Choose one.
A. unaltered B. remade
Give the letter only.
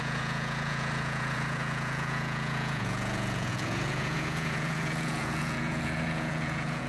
B